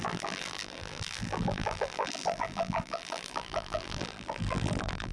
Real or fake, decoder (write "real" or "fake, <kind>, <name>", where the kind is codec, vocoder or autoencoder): fake, vocoder, BigVGAN v2